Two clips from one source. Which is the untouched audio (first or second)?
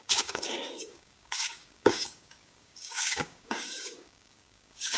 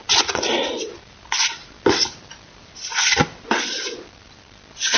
second